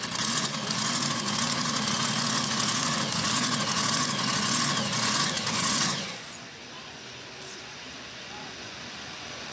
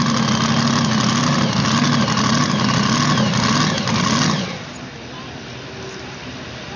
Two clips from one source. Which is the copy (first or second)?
first